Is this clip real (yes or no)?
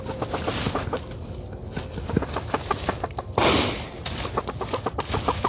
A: yes